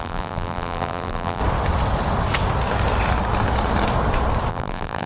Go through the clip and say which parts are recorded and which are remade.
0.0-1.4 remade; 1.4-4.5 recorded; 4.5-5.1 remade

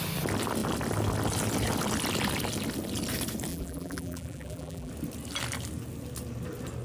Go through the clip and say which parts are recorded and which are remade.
0.0-3.5 recorded; 3.5-4.9 remade; 4.9-6.8 recorded

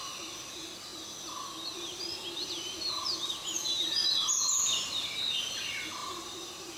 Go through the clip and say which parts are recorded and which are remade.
0.0-6.0 recorded; 6.0-6.8 remade

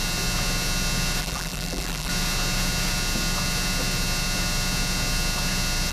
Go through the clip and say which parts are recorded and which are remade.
0.0-1.2 recorded; 1.2-2.1 remade; 2.1-5.9 recorded

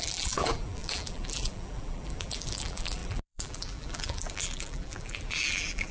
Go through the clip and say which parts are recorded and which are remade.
0.0-5.9 remade

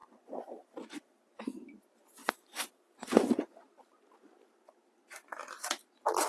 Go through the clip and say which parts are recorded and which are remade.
0.0-1.2 remade; 1.2-2.2 recorded; 2.2-3.4 remade; 3.4-6.3 recorded